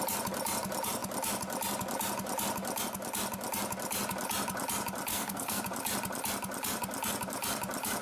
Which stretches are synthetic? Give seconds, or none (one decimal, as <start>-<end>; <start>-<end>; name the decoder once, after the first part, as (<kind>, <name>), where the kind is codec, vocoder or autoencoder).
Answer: 5.1-5.6 (codec, SNAC)